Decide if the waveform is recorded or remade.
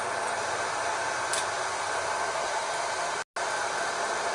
recorded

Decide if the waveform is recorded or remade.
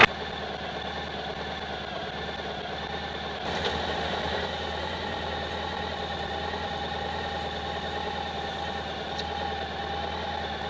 recorded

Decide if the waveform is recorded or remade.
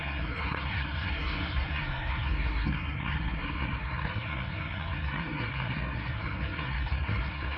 remade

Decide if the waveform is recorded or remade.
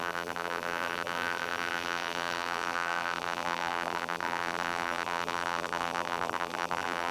remade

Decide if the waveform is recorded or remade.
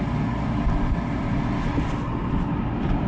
recorded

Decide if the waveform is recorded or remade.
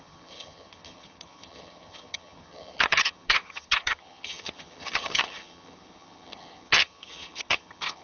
remade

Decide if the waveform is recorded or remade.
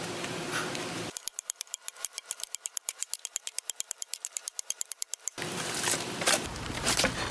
remade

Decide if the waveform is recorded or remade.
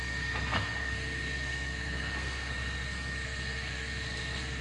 remade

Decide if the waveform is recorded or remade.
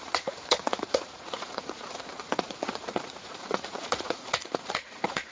remade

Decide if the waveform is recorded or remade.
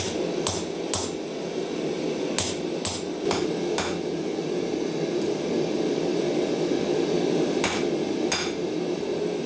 recorded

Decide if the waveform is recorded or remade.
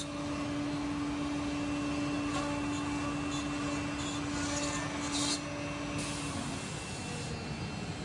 recorded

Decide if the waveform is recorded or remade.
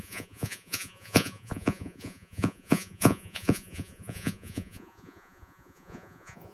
remade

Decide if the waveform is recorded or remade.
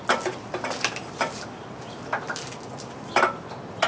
recorded